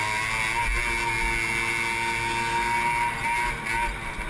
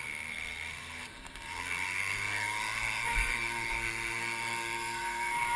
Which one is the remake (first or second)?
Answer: second